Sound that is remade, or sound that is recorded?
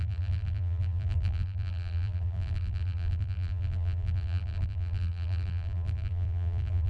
remade